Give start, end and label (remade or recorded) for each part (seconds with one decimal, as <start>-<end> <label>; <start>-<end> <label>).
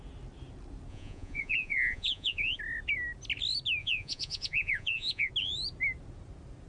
0.0-0.9 recorded; 0.9-2.6 remade; 2.6-3.8 recorded; 3.8-5.3 remade; 5.3-6.7 recorded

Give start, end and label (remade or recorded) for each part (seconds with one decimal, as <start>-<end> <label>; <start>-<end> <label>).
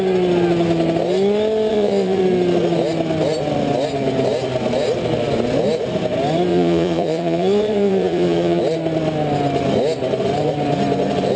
0.0-1.7 recorded; 1.7-2.2 remade; 2.2-6.5 recorded; 6.5-8.6 remade; 8.6-11.4 recorded